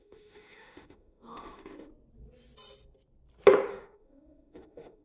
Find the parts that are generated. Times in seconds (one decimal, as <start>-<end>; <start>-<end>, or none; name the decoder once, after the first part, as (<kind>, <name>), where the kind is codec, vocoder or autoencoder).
0.0-1.9 (autoencoder, DAC-VAE); 3.7-5.0